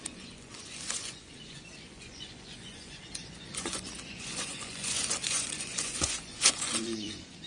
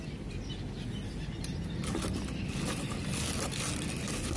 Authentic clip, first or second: second